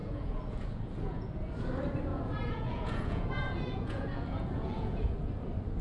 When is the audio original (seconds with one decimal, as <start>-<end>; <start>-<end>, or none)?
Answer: 1.5-2.1; 5.3-5.8